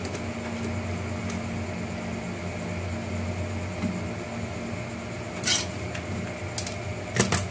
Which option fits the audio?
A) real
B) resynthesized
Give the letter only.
A